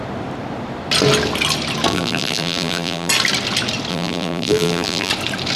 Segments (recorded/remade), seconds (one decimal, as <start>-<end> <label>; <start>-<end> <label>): 0.0-1.9 recorded; 1.9-3.1 remade; 3.1-3.9 recorded; 3.9-5.1 remade; 5.1-5.6 recorded